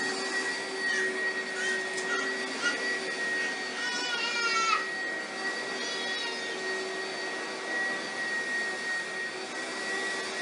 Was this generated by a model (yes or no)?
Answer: no